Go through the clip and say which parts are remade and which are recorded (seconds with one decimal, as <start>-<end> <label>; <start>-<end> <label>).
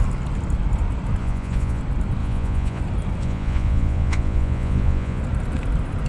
0.0-1.2 recorded; 1.2-1.8 remade; 1.8-2.2 recorded; 2.2-2.8 remade; 2.8-3.2 recorded; 3.2-5.2 remade; 5.2-6.1 recorded